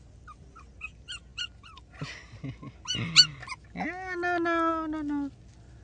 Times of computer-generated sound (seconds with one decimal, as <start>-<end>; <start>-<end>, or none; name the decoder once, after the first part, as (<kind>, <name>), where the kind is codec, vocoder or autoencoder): 1.3-2.4 (vocoder, BigVGAN v2)